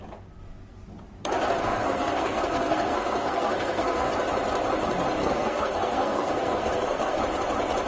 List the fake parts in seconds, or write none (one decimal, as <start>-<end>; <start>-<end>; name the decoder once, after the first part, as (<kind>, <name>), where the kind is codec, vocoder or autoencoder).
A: 1.6-4.1 (codec, SNAC); 5.2-7.2